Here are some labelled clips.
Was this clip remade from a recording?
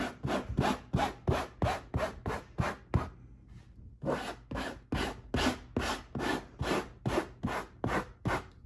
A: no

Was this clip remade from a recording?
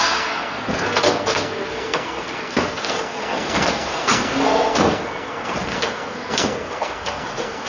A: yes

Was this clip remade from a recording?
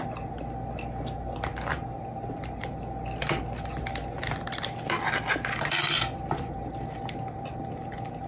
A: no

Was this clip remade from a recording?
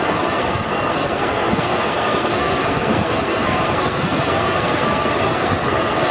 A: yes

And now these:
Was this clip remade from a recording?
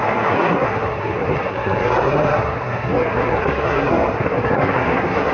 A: yes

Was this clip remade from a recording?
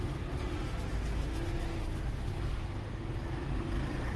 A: no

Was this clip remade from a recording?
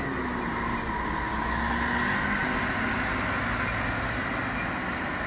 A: no